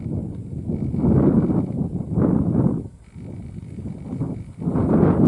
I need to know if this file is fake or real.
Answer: real